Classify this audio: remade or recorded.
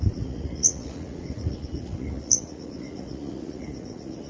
remade